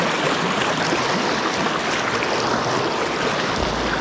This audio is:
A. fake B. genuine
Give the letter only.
B